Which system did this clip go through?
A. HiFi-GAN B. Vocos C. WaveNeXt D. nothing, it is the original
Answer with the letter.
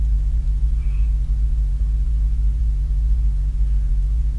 B